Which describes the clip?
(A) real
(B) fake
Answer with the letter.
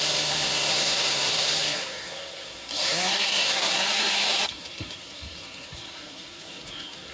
B